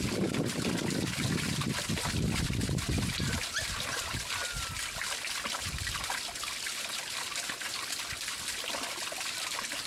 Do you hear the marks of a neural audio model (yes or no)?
no